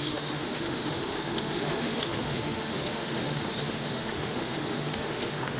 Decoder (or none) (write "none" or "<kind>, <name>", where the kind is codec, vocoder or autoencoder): autoencoder, DAC-VAE